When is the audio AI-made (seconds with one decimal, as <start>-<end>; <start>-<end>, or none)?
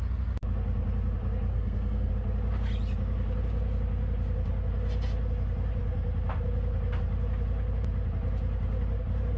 1.5-2.1